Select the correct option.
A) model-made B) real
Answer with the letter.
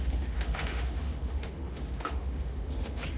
A